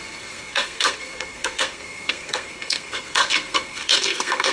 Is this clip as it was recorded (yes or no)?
no